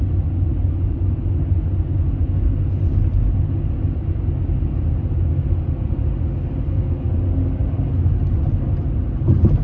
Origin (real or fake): real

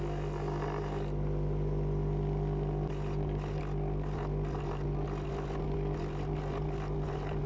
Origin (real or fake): real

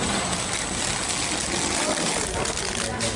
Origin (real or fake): real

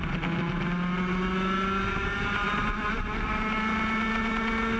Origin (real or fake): real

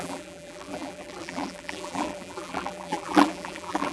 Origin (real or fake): fake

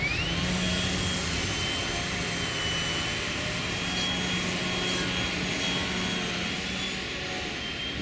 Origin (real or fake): real